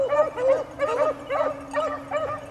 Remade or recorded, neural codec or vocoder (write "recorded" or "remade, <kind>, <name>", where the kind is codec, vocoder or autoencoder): recorded